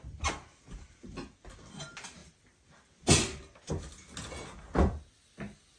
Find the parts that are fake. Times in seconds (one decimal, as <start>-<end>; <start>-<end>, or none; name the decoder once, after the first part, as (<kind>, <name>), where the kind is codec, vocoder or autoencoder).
none